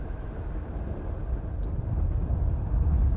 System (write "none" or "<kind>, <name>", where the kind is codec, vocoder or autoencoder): none